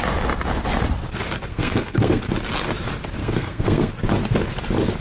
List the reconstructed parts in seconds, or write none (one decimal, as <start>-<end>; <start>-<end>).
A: 1.5-2.2; 3.2-3.9